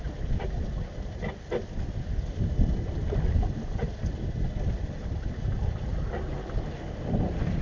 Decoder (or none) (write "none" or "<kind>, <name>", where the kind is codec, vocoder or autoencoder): none